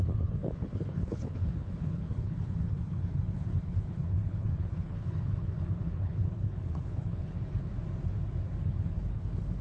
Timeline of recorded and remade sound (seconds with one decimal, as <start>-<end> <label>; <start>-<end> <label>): 0.0-7.7 remade; 7.7-8.6 recorded; 8.6-9.6 remade